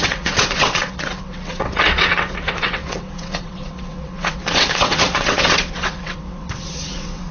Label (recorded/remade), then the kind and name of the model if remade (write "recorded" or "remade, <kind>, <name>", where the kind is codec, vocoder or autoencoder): remade, vocoder, WaveNeXt